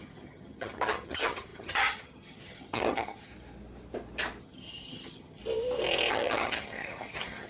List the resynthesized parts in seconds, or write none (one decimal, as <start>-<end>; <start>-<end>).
0.0-3.3; 4.4-5.4; 6.1-7.5